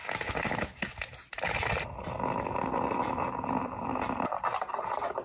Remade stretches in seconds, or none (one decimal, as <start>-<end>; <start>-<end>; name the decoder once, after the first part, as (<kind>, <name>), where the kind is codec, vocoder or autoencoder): none